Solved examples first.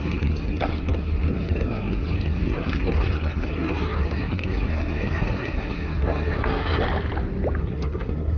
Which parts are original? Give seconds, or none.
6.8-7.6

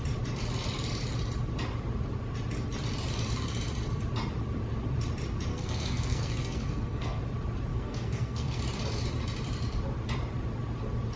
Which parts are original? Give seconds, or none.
0.0-5.5; 7.2-7.7; 8.6-11.2